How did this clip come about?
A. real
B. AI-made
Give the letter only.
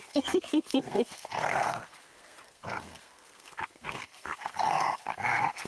B